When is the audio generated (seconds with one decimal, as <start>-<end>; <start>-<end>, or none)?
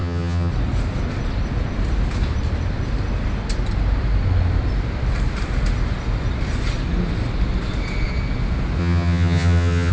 0.0-0.5; 8.8-9.9